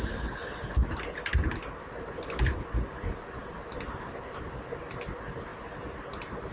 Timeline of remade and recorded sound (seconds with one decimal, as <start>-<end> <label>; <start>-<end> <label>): 0.0-6.5 recorded